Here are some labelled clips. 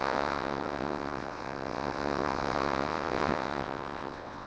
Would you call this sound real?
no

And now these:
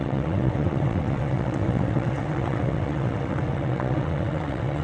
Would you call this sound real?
no